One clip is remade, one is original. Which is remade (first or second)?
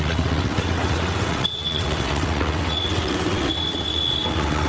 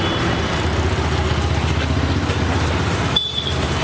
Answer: first